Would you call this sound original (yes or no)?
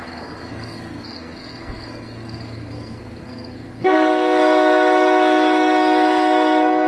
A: no